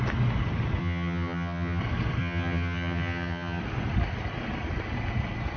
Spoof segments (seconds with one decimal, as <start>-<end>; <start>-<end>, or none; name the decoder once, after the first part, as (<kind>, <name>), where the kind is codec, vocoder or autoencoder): 0.8-1.8 (vocoder, HiFi-GAN); 2.2-3.6